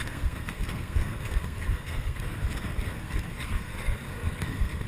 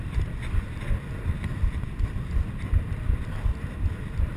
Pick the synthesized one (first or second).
first